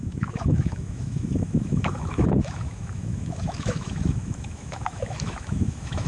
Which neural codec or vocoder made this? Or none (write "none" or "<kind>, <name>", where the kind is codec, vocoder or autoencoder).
autoencoder, DAC-VAE